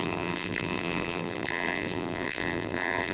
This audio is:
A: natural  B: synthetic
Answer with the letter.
B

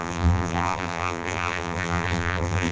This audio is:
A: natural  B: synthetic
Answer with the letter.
B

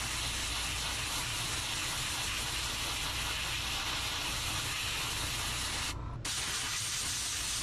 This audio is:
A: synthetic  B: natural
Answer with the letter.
B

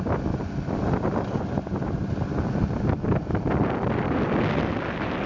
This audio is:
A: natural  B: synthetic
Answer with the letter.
A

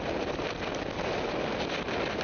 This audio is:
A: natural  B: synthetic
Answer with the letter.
A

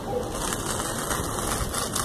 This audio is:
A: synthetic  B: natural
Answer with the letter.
B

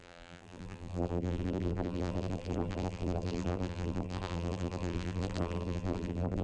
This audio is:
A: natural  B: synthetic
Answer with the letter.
B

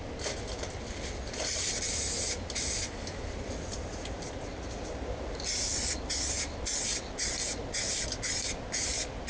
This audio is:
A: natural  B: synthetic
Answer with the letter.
A